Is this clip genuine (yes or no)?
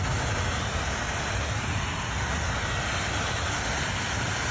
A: yes